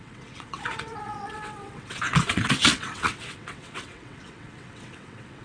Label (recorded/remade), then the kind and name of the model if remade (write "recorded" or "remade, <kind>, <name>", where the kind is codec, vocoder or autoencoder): remade, vocoder, WaveNeXt